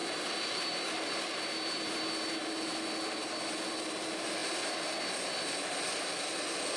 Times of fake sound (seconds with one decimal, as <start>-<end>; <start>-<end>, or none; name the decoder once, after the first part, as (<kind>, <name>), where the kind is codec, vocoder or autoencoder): 0.0-2.4 (vocoder, BigVGAN v2)